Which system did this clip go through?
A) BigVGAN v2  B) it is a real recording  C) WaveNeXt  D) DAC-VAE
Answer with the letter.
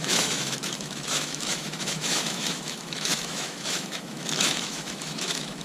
D